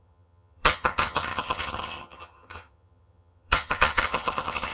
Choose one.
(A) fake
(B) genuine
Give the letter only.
A